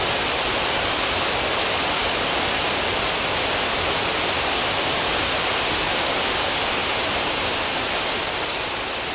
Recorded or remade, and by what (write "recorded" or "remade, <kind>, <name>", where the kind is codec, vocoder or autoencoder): recorded